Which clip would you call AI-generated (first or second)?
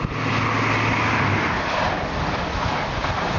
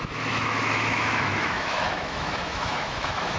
second